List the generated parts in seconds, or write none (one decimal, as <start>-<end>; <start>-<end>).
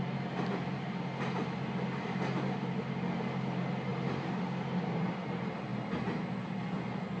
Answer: none